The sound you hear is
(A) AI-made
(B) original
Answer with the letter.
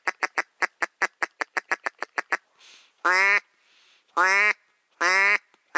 B